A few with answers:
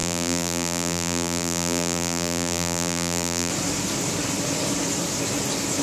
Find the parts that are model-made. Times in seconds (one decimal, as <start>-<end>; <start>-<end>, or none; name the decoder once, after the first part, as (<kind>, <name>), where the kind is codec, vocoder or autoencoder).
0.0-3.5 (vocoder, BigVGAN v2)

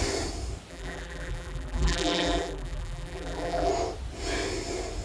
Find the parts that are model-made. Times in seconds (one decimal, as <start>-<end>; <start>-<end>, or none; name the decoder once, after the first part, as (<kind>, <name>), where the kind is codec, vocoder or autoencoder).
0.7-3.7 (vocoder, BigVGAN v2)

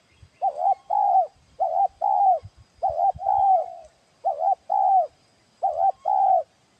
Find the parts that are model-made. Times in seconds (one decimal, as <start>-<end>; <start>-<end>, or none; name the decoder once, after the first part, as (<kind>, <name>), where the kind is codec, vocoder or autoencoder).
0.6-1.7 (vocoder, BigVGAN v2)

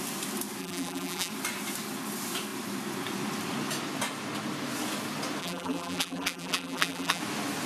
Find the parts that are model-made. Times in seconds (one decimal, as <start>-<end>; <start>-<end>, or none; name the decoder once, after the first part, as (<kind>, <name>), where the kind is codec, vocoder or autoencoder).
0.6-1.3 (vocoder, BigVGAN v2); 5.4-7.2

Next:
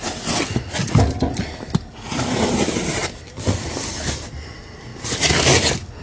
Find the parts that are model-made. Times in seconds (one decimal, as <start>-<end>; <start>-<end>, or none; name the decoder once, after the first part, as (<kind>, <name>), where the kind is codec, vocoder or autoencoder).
none

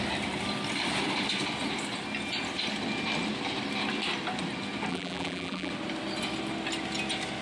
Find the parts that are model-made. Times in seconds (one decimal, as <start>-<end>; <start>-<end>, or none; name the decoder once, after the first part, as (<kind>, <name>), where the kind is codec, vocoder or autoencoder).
4.9-5.7 (vocoder, BigVGAN v2)

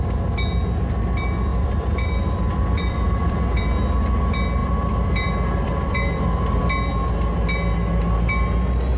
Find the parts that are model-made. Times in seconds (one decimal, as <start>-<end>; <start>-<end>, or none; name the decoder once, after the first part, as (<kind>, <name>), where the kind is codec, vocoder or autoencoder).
1.5-3.6 (vocoder, BigVGAN v2); 4.6-6.6